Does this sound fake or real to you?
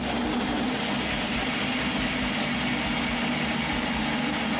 real